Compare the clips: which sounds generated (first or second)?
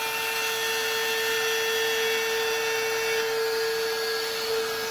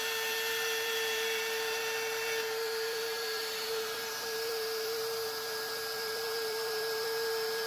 second